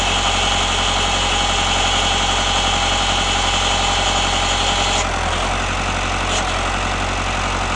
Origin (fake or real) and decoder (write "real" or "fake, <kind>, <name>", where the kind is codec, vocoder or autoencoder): real